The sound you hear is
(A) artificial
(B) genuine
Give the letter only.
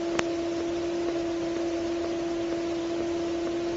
B